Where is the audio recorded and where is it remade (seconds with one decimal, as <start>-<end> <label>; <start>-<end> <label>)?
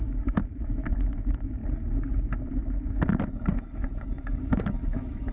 0.0-1.6 remade; 1.6-3.5 recorded; 3.5-5.3 remade